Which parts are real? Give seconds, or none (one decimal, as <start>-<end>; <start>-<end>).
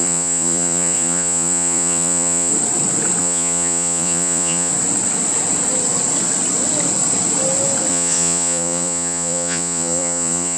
2.5-3.2; 4.7-7.9